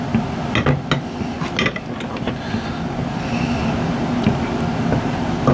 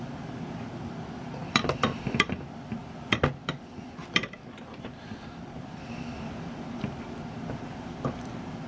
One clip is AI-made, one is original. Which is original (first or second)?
first